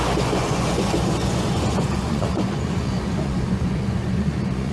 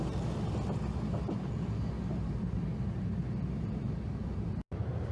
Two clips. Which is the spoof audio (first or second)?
first